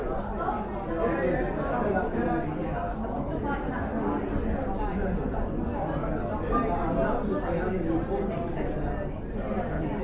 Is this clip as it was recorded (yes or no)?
yes